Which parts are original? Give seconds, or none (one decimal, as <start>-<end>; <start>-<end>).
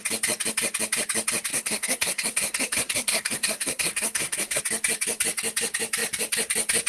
0.0-1.5; 4.6-6.9